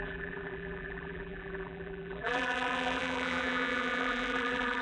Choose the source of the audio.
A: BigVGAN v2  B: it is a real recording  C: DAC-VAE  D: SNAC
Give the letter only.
A